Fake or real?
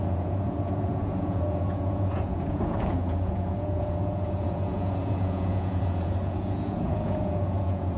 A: fake